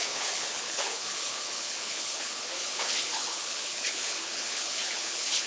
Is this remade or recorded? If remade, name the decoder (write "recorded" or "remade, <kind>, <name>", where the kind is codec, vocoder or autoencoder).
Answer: remade, codec, HILCodec